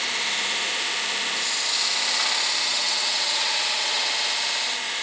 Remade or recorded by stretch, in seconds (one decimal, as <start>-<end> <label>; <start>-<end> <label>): 0.0-2.7 recorded; 2.7-4.1 remade; 4.1-5.0 recorded